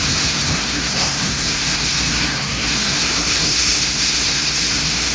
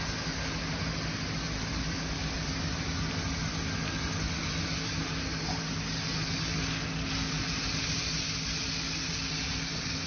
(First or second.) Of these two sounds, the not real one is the first